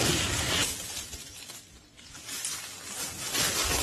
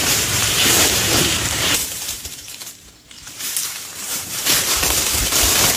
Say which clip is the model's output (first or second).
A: second